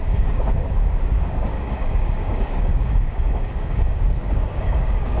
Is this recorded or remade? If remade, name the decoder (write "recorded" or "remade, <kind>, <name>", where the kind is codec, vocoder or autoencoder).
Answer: remade, codec, DAC